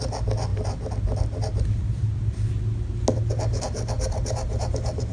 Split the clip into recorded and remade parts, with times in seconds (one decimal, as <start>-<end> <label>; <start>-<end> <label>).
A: 0.0-5.1 recorded